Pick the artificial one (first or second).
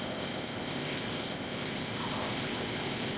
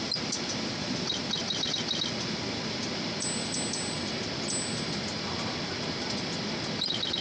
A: first